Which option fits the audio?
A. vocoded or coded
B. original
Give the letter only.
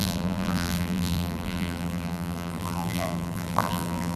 A